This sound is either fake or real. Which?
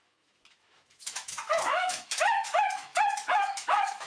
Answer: fake